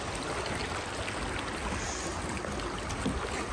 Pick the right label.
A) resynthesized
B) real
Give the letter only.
B